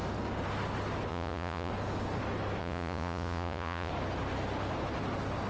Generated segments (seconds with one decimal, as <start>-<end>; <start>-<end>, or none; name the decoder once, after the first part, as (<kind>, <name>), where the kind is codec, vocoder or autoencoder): 1.1-1.7 (vocoder, Vocos); 2.6-3.9